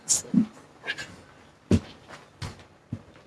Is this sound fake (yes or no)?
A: no